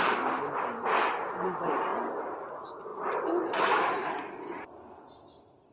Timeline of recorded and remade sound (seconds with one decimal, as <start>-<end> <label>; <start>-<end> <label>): 0.0-2.9 recorded; 2.9-4.1 remade; 4.1-5.7 recorded